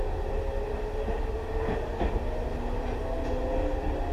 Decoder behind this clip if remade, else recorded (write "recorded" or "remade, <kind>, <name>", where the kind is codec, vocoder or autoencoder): recorded